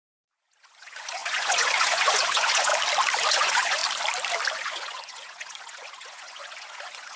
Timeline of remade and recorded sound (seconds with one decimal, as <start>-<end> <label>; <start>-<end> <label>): 0.0-2.7 remade; 2.7-3.3 recorded; 3.3-3.8 remade; 3.8-4.5 recorded; 4.5-7.2 remade